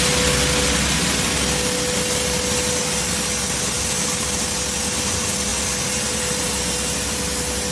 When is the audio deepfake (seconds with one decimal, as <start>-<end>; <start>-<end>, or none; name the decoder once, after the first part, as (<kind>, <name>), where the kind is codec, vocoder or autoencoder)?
none